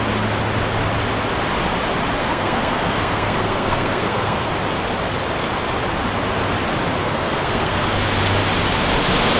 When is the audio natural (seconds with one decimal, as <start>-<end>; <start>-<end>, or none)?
0.0-2.2; 4.5-7.0; 7.9-9.4